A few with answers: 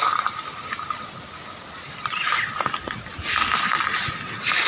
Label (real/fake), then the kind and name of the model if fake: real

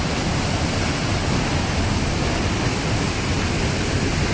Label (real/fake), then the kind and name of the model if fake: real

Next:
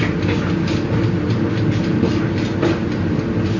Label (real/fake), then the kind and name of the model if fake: real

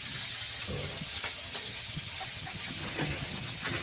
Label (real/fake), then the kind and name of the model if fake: fake, vocoder, HiFi-GAN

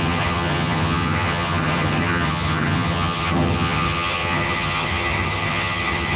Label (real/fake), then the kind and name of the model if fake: fake, vocoder, HiFi-GAN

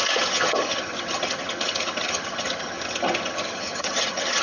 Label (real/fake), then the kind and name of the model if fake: fake, vocoder, HiFi-GAN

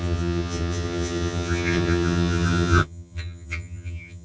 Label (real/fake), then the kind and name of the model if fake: fake, vocoder, HiFi-GAN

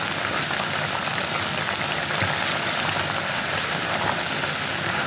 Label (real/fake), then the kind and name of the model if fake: real